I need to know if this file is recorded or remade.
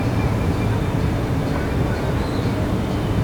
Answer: recorded